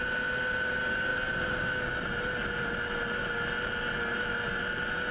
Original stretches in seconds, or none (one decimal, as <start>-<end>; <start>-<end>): 0.0-5.1